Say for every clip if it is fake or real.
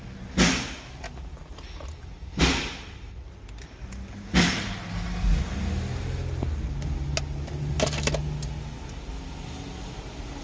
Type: real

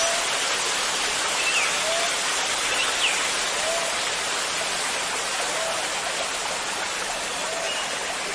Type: real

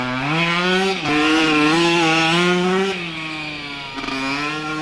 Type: real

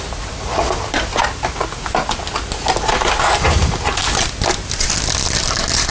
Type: real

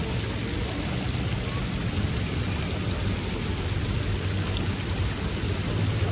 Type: real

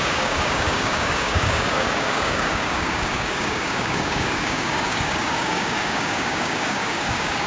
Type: fake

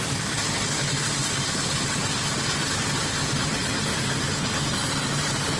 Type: real